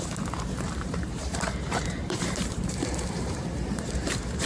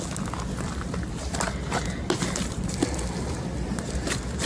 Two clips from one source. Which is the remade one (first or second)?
first